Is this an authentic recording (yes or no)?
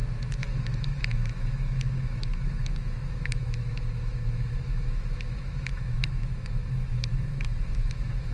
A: no